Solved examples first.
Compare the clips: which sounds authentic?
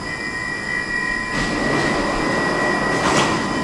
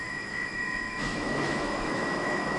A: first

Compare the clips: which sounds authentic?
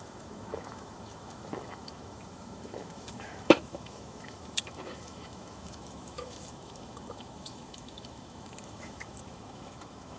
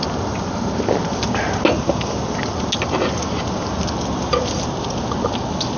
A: second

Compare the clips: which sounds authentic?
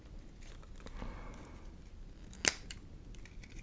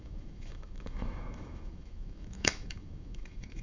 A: first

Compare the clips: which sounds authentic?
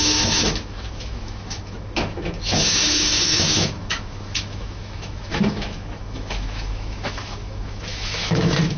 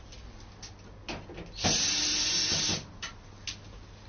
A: second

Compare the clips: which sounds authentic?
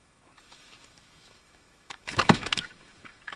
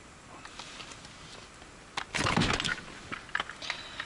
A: second